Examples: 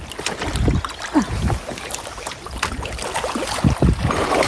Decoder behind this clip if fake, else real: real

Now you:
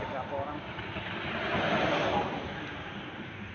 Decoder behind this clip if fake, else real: real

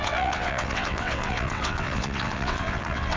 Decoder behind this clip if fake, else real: fake, vocoder, WaveNeXt